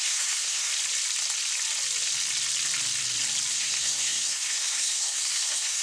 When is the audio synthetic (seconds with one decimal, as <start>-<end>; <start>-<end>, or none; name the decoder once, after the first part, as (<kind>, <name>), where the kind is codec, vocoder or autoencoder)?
0.0-0.7 (codec, SNAC); 3.5-5.8